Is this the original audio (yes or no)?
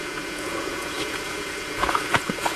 no